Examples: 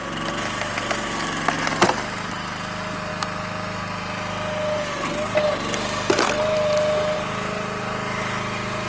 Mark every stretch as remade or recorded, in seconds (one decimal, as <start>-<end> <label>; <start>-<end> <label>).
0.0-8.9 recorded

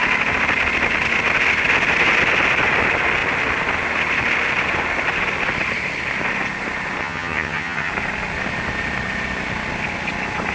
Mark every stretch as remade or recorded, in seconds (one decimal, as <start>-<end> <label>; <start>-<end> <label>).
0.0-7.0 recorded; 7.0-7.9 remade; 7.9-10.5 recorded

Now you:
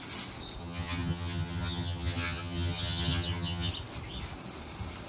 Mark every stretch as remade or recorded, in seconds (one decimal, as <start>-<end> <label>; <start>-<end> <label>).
0.0-0.6 recorded; 0.6-3.7 remade; 3.7-5.1 recorded